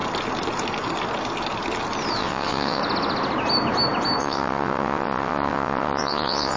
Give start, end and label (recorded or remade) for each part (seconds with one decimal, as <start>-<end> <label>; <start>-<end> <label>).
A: 0.0-2.2 recorded; 2.2-2.8 remade; 2.8-4.2 recorded; 4.2-6.6 remade